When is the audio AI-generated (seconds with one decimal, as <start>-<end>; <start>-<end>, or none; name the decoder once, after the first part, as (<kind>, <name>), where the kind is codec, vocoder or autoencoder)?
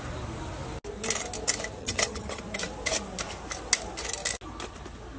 1.8-2.4 (vocoder, HiFi-GAN)